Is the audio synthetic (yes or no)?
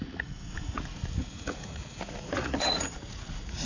yes